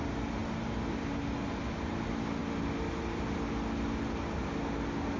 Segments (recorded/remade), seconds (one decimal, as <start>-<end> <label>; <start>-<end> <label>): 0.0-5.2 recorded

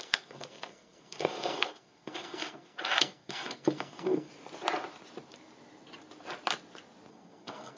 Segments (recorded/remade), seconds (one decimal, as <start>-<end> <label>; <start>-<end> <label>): 0.0-4.3 remade; 4.3-7.1 recorded; 7.1-7.8 remade

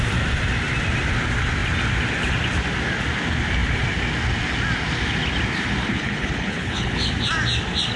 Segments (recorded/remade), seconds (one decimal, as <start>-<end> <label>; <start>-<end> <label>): 0.0-5.8 recorded; 5.8-7.1 remade; 7.1-8.0 recorded